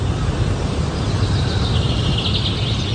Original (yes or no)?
yes